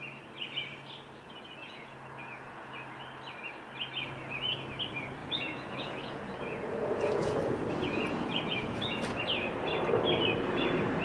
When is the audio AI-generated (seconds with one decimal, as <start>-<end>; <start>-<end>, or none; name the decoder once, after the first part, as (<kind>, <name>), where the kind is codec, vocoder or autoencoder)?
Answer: 1.6-2.7 (vocoder, Vocos); 5.2-9.0